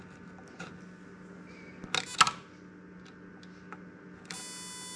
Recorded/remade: recorded